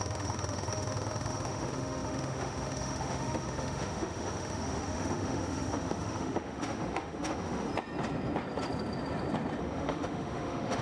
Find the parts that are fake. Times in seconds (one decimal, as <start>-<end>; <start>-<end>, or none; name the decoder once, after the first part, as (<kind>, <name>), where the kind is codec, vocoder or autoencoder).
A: 0.0-7.7 (autoencoder, DAC-VAE); 9.6-10.8